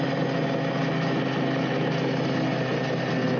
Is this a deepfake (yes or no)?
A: no